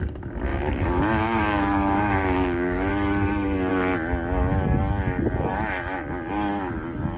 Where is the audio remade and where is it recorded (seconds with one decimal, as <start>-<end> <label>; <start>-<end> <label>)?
0.0-0.5 recorded; 0.5-2.9 remade; 2.9-7.2 recorded